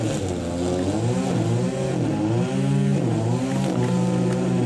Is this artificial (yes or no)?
no